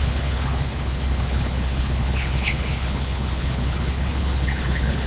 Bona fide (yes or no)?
no